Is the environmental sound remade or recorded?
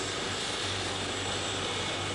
recorded